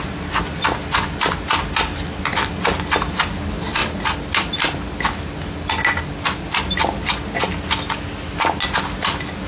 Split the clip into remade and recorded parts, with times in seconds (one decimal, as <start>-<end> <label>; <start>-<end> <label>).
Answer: 0.0-9.5 recorded